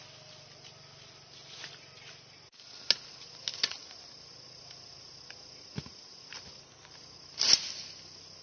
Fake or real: real